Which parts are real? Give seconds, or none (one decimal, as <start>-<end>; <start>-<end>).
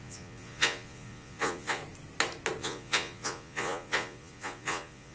1.8-2.6